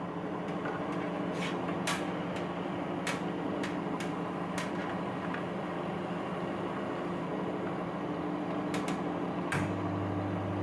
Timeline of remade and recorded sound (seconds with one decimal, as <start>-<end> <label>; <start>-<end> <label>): 0.0-10.6 recorded